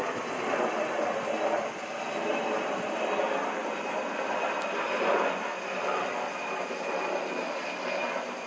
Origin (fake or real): real